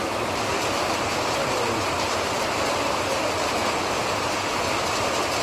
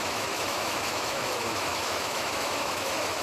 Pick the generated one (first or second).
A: second